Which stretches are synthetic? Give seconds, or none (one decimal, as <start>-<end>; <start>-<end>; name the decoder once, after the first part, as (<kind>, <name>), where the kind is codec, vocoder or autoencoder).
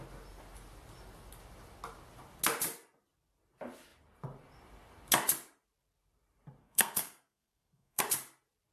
6.6-8.0 (codec, SNAC)